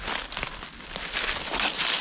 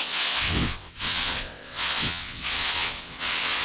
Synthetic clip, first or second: second